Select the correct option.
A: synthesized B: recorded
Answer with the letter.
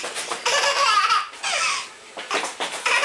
A